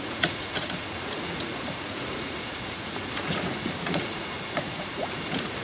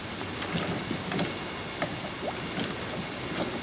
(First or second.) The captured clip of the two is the second